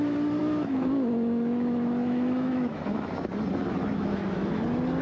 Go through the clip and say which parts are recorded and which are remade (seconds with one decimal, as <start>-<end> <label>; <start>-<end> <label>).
0.0-0.4 recorded; 0.4-3.3 remade; 3.3-3.9 recorded; 3.9-4.6 remade; 4.6-5.0 recorded